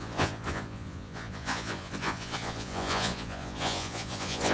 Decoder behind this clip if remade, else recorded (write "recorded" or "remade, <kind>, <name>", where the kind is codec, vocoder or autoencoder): remade, vocoder, Vocos